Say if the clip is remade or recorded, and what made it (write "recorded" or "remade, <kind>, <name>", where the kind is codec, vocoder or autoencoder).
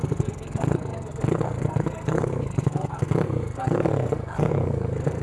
remade, codec, SNAC